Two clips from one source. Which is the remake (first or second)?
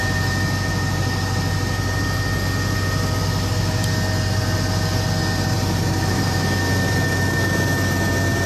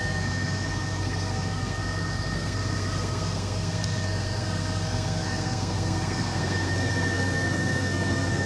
second